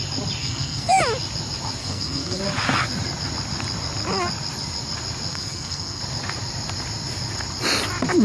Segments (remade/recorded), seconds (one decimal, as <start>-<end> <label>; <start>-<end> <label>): 0.0-0.4 recorded; 0.4-1.0 remade; 1.0-1.8 recorded; 1.8-2.4 remade; 2.4-5.3 recorded; 5.3-6.0 remade; 6.0-8.2 recorded